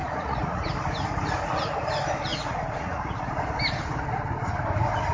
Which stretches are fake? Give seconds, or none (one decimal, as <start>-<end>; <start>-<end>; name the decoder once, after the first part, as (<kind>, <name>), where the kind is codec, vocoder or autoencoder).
0.0-0.7 (vocoder, Vocos); 2.3-3.3

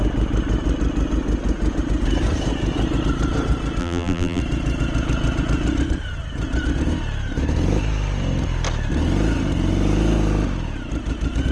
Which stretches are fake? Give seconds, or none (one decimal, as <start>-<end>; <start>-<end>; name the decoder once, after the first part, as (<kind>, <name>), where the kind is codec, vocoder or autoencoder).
3.8-4.4 (vocoder, BigVGAN v2)

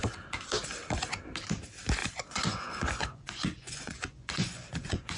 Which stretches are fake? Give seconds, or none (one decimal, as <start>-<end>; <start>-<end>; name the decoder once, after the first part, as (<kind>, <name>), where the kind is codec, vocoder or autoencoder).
2.0-5.2 (vocoder, Vocos)